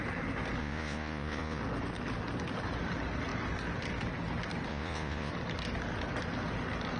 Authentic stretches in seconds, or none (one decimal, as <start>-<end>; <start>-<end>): 0.0-0.6; 1.6-4.7; 5.3-7.0